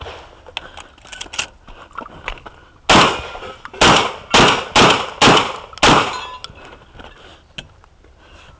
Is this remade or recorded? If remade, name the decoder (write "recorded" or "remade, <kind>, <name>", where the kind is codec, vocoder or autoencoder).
recorded